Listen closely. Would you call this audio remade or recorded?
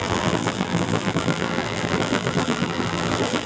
remade